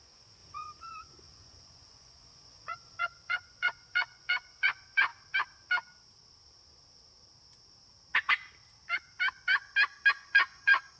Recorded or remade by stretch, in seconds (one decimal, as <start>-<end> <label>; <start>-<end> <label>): 0.0-5.1 remade; 5.1-10.1 recorded; 10.1-11.0 remade